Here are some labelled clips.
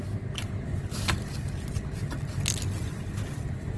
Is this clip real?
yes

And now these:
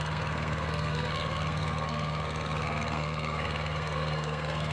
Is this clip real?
no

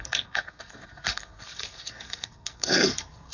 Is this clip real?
no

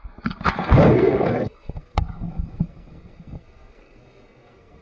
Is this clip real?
no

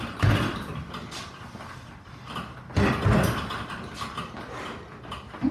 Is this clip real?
yes